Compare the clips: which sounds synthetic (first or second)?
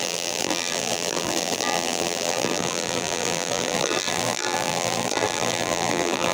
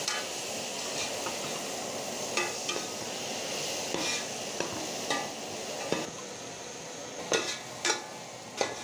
first